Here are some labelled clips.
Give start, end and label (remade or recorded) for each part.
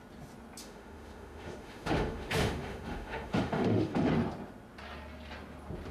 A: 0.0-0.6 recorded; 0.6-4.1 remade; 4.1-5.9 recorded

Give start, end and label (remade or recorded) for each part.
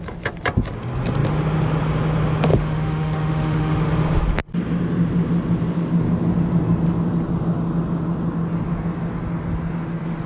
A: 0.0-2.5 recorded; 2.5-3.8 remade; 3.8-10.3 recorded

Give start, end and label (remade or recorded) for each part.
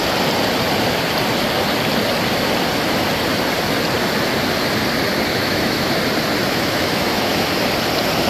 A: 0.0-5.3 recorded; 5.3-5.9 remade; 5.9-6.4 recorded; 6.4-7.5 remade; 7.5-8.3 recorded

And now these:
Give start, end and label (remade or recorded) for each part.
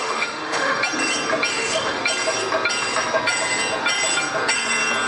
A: 0.0-0.8 remade; 0.8-1.5 recorded; 1.5-2.0 remade; 2.0-5.1 recorded